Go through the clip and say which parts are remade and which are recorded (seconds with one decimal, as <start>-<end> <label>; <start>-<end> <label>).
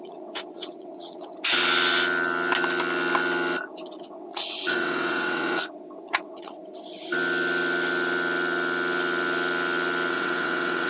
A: 0.0-1.3 remade; 1.3-4.0 recorded; 4.0-6.6 remade; 6.6-10.1 recorded; 10.1-10.9 remade